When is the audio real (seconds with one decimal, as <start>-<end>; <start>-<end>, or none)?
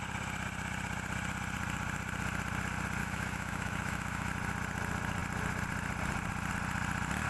0.0-3.0; 4.3-7.3